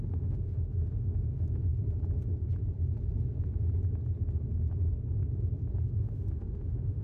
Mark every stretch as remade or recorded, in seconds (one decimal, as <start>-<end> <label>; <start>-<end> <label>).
0.0-1.7 remade; 1.7-5.9 recorded; 5.9-7.0 remade